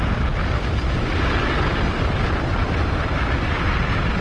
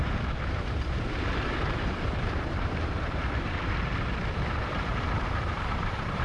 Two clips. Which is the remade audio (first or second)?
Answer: second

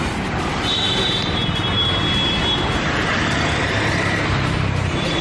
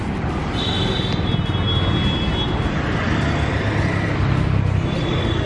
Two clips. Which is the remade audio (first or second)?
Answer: first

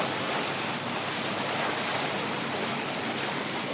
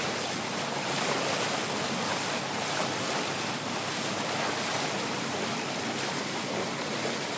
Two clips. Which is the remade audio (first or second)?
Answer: second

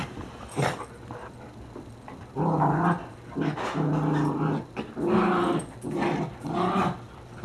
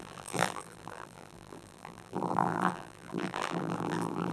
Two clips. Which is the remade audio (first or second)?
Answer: second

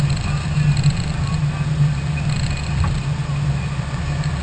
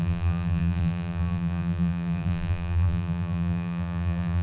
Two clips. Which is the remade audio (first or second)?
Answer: second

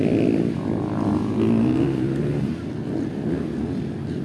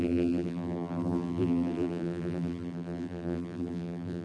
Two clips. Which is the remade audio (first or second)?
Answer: second